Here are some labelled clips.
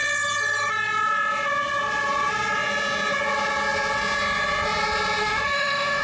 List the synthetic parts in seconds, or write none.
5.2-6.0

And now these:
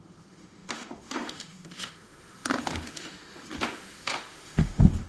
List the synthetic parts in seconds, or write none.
0.0-5.1